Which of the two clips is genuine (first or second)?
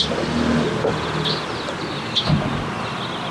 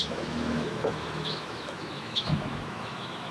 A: first